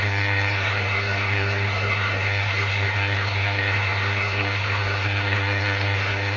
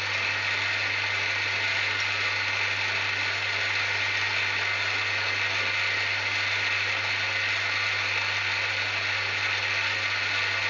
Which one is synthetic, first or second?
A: first